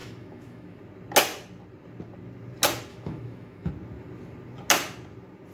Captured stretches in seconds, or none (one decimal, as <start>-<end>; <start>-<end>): 0.8-2.9; 3.7-5.5